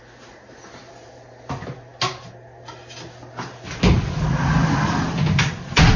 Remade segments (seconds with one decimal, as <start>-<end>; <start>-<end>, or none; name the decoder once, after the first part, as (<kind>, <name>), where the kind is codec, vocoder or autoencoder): none